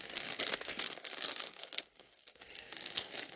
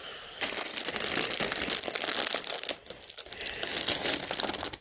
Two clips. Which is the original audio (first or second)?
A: second